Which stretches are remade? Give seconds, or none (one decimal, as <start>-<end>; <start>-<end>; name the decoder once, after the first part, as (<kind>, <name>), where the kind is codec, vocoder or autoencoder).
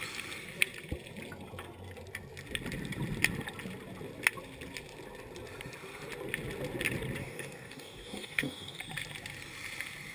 7.2-8.8 (codec, DAC)